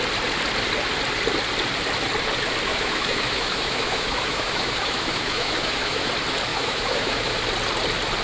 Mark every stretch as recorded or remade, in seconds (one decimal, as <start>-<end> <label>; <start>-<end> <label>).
0.0-2.7 recorded; 2.7-6.1 remade; 6.1-6.5 recorded; 6.5-7.4 remade; 7.4-8.2 recorded